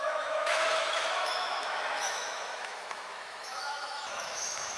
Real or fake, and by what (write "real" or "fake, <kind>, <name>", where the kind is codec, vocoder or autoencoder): fake, autoencoder, DAC-VAE